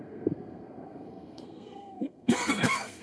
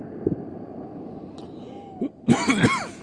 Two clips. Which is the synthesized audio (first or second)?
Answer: first